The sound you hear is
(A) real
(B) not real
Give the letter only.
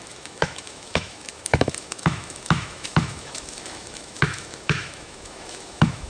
B